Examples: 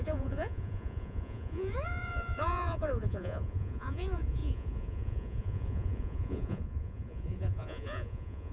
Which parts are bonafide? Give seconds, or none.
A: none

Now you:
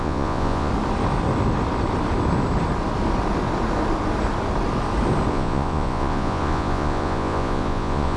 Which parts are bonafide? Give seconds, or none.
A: 0.7-5.3

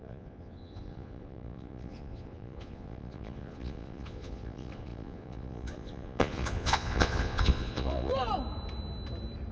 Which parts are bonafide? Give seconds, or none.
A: 8.1-9.5

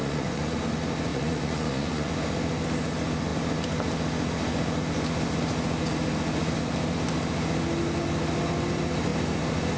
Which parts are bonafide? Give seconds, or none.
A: 0.6-1.1; 2.1-9.8

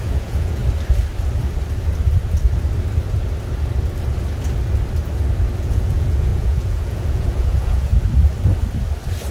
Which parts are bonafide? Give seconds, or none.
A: 0.6-5.6; 7.9-9.3